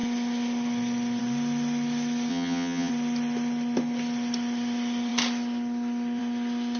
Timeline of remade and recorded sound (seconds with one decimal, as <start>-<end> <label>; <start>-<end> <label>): 0.0-2.3 recorded; 2.3-2.9 remade; 2.9-6.8 recorded